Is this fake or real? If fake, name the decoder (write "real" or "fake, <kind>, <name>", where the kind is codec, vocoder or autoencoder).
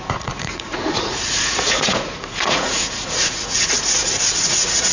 fake, vocoder, Vocos